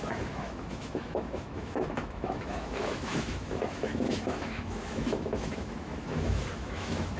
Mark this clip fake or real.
fake